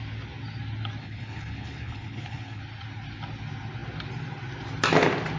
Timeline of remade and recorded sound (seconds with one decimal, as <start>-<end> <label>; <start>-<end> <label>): 0.0-1.0 recorded; 1.0-2.6 remade; 2.6-5.4 recorded